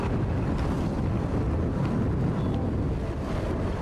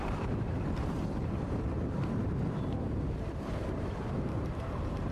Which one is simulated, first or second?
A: second